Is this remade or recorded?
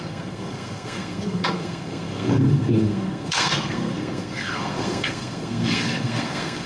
remade